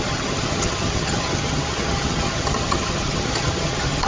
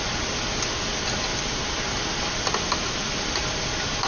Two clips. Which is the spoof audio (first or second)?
first